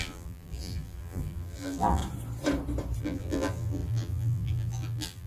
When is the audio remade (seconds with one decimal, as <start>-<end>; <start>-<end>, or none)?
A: 0.0-2.0; 3.0-5.3